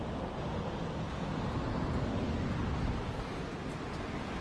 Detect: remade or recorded recorded